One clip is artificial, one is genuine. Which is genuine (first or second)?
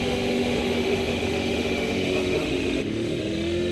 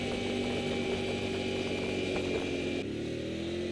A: second